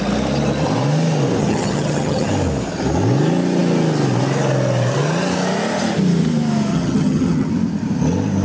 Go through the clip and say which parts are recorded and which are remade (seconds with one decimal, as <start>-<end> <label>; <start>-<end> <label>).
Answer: 0.0-1.4 recorded; 1.4-2.3 remade; 2.3-6.7 recorded; 6.7-7.5 remade; 7.5-8.4 recorded